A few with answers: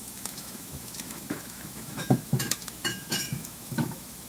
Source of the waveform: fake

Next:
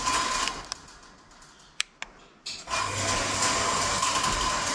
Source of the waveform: real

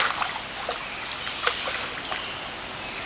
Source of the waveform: real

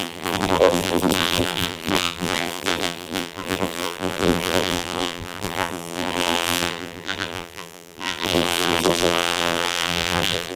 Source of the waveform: fake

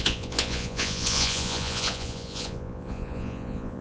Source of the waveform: fake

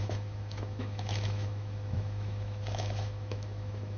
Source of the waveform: fake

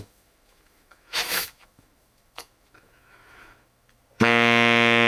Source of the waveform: fake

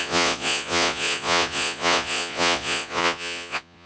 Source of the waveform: fake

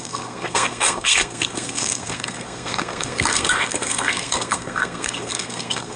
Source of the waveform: fake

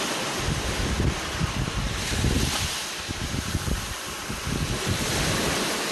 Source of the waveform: real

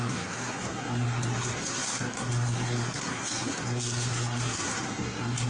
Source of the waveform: fake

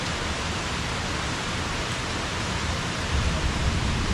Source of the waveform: fake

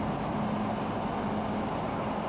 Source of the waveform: real